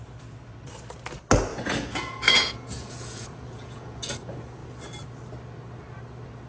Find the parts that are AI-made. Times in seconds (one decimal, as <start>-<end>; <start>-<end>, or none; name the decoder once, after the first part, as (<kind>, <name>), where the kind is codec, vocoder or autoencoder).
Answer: 1.5-4.1 (vocoder, Vocos)